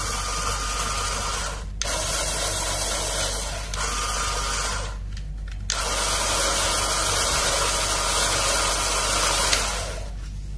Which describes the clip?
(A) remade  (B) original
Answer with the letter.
B